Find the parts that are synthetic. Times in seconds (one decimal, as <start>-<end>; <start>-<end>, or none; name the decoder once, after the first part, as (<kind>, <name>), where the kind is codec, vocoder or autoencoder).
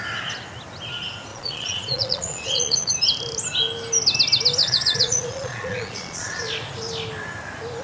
1.3-2.9 (vocoder, Vocos); 4.6-6.4